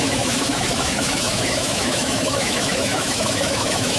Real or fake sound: fake